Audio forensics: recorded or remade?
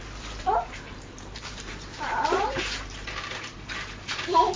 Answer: remade